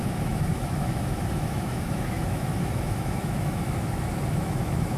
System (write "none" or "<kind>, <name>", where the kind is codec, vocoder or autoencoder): autoencoder, DAC-VAE